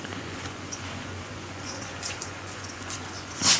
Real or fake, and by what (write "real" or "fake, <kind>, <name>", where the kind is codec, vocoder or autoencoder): fake, vocoder, Vocos